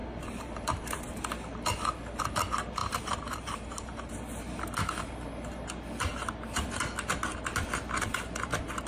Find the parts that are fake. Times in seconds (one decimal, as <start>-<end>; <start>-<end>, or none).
0.0-1.2; 2.8-4.1